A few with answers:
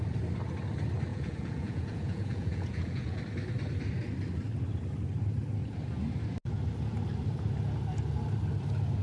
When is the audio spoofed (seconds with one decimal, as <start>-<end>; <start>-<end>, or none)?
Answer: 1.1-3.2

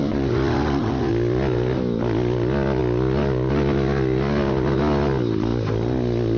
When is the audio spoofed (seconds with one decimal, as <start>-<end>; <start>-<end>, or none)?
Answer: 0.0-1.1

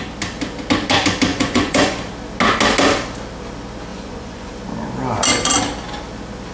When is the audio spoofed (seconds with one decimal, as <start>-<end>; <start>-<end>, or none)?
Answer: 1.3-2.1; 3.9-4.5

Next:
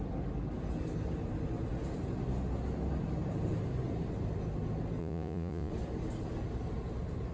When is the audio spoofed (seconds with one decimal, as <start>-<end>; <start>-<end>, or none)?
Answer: 5.0-5.7